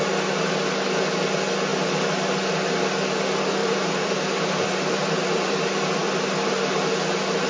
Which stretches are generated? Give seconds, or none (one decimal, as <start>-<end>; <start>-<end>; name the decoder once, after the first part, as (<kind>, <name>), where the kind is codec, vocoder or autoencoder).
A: 3.6-6.5 (vocoder, BigVGAN v2)